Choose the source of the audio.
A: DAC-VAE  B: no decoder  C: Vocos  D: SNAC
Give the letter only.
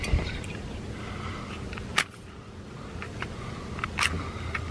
B